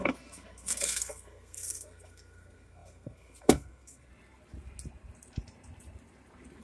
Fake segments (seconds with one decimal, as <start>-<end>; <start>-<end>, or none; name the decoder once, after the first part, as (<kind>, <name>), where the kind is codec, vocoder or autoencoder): 0.0-4.1 (codec, SNAC)